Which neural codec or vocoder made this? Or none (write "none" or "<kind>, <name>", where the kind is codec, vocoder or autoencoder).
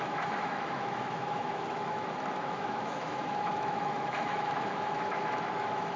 autoencoder, DAC-VAE